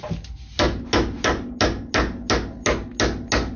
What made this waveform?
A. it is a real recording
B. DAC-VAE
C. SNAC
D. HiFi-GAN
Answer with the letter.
A